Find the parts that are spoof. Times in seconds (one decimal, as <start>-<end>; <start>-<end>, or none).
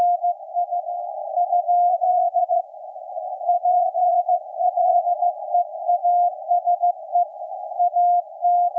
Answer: 1.9-5.0; 7.3-7.8